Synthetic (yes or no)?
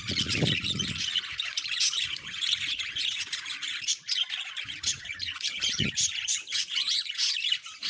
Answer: yes